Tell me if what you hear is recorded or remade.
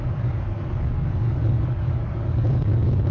remade